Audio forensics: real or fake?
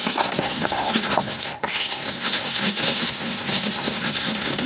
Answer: fake